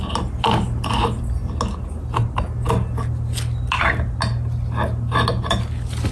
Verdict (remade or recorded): recorded